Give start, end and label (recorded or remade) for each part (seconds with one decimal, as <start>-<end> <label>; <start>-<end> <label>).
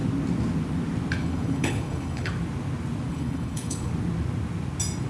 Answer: 0.0-1.2 recorded; 1.2-2.3 remade; 2.3-3.1 recorded; 3.1-3.9 remade; 3.9-5.1 recorded